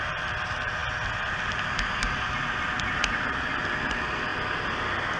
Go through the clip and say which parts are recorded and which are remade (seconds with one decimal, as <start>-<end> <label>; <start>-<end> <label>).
0.0-5.2 recorded